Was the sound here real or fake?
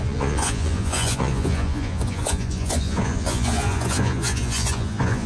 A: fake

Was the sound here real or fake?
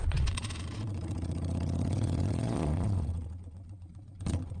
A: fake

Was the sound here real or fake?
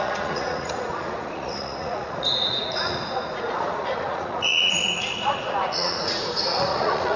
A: fake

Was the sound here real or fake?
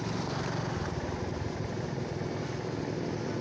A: real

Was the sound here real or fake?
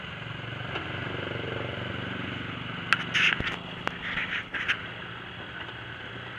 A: real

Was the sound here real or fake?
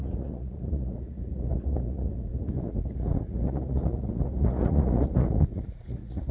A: fake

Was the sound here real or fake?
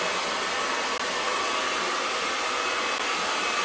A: real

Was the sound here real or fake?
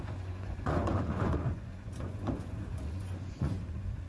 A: fake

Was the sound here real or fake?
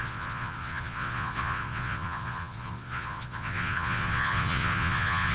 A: fake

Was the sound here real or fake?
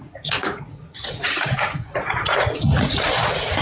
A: fake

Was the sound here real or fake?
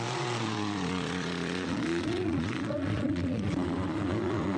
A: fake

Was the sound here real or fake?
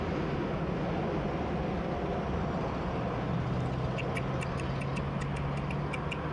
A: real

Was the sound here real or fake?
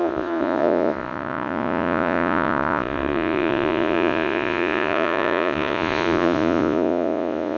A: fake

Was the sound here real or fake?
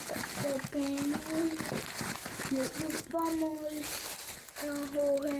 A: real